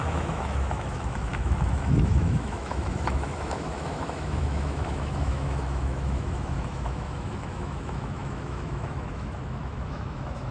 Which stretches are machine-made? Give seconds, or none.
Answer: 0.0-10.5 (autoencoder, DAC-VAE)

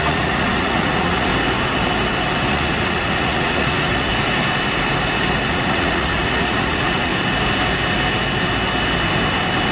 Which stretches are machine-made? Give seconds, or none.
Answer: 0.0-1.3 (vocoder, Vocos); 2.5-4.1; 5.5-7.1

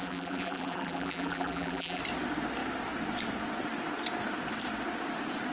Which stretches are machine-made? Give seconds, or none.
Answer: 0.0-2.0 (vocoder, BigVGAN v2)

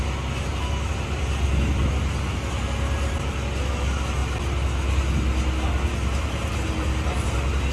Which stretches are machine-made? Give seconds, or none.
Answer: none

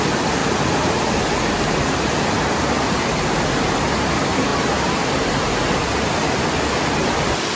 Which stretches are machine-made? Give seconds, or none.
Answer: none

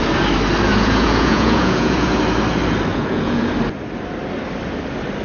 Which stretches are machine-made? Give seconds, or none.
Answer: 0.7-2.2 (vocoder, Vocos); 2.9-3.5